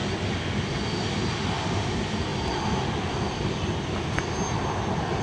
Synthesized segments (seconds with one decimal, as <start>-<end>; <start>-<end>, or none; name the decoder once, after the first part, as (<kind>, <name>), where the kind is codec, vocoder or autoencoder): none